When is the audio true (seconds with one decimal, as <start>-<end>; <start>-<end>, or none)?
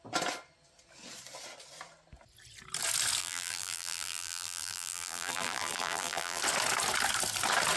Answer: 0.0-3.2; 6.4-7.8